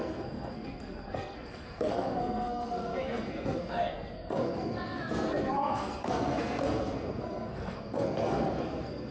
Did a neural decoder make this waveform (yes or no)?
yes